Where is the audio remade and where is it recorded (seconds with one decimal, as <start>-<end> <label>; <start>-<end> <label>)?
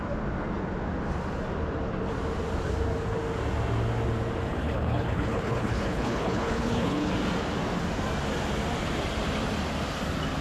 0.0-4.5 recorded; 4.5-7.1 remade; 7.1-10.4 recorded